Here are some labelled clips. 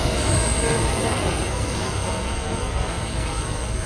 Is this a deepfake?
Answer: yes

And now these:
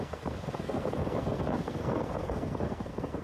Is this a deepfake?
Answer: yes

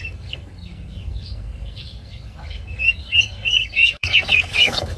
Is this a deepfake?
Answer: yes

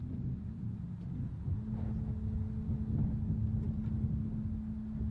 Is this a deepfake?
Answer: no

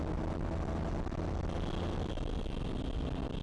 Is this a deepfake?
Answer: no